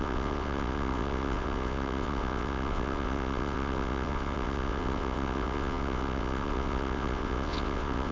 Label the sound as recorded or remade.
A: remade